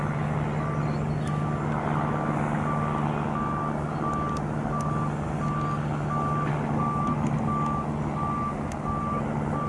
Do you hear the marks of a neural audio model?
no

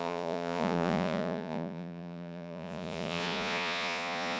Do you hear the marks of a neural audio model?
yes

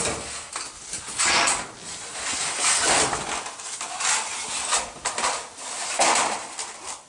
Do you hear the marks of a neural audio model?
no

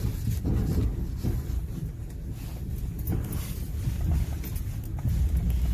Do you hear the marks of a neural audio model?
no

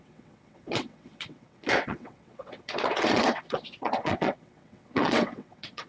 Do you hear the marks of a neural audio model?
yes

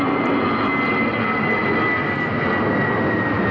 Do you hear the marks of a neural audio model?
no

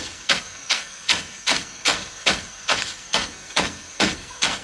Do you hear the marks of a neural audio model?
yes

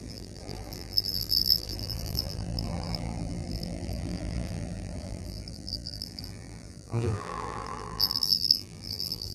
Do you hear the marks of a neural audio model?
yes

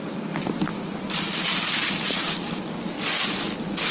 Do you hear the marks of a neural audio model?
no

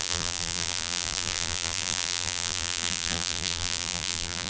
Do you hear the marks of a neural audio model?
yes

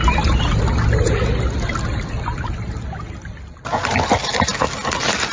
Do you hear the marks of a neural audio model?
no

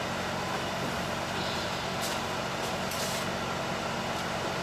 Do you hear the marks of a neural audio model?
no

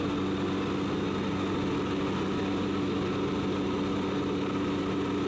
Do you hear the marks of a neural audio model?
no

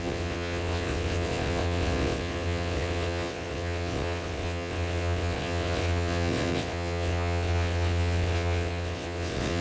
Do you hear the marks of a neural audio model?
yes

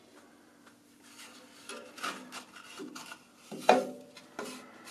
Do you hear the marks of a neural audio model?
no